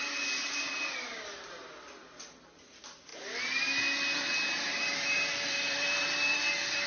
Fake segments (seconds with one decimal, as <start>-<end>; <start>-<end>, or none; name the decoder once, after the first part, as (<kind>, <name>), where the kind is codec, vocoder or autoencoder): 0.0-1.6 (vocoder, BigVGAN v2); 4.7-6.4